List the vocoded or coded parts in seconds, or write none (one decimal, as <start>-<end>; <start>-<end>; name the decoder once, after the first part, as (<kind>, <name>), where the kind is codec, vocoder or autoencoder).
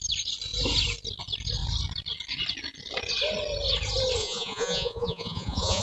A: 4.2-5.8 (vocoder, Vocos)